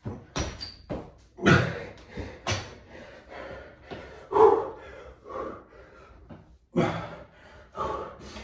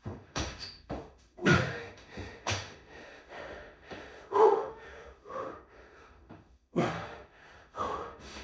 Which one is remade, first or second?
second